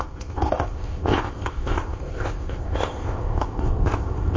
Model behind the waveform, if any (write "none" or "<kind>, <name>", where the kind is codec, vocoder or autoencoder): codec, ZipCodec